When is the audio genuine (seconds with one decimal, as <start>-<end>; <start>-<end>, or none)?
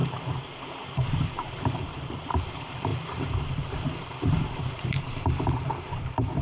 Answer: none